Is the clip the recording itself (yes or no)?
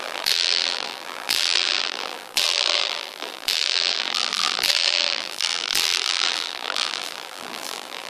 no